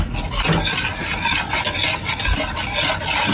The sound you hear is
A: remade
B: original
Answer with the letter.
B